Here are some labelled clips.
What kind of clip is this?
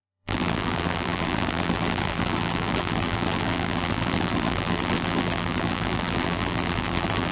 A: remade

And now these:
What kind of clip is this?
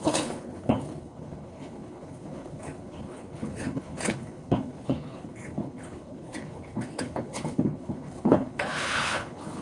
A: remade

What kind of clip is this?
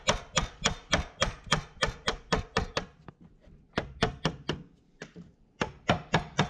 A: recorded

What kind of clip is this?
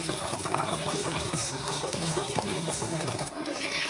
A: remade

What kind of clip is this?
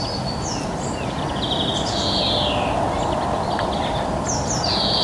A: recorded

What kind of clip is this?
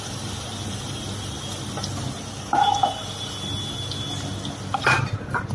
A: recorded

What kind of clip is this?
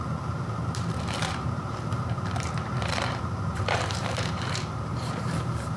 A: remade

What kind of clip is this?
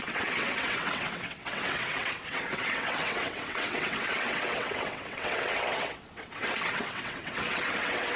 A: remade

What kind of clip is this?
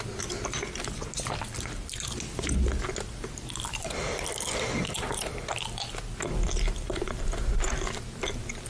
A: recorded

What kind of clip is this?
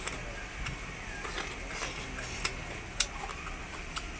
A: recorded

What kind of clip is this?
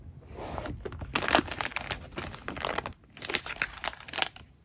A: recorded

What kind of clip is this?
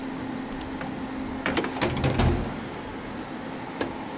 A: recorded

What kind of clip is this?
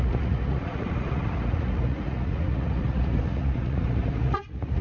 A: remade